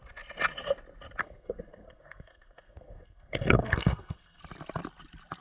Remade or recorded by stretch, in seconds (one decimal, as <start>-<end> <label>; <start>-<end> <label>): 0.0-1.2 recorded; 1.2-4.4 remade; 4.4-5.4 recorded

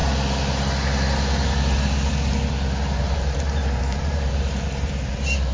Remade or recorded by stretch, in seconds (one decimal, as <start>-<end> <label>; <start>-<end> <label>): 0.0-3.0 recorded; 3.0-5.5 remade